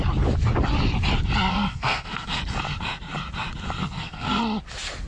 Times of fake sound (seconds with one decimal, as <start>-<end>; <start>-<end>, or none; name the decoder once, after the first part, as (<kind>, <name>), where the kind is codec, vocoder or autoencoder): 1.5-2.4 (codec, SNAC); 3.8-4.4